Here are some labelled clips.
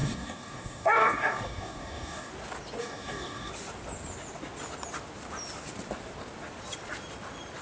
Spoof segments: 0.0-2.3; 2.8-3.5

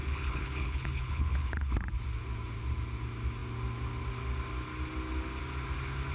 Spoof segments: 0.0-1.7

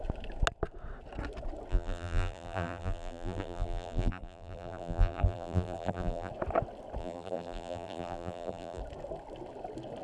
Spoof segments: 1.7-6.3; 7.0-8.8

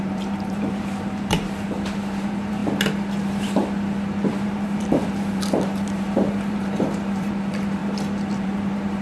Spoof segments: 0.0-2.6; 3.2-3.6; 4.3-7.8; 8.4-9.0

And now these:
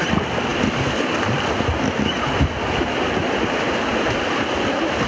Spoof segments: none

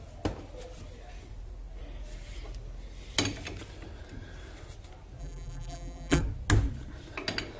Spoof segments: 5.2-6.2